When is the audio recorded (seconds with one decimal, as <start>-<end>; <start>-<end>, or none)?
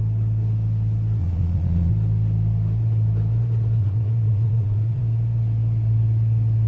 0.0-1.2; 1.9-3.8; 5.0-6.7